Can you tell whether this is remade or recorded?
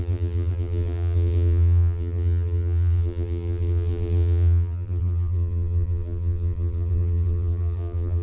remade